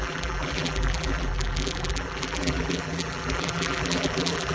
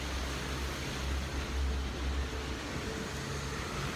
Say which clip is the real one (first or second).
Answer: second